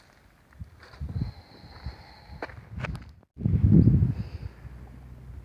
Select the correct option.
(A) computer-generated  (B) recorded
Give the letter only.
B